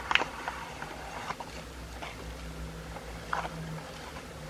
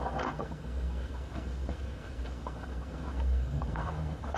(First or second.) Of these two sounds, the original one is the first